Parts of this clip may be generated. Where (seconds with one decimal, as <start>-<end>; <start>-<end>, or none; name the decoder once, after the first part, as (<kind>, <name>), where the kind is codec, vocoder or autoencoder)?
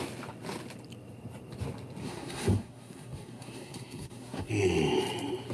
2.0-4.5 (codec, SNAC)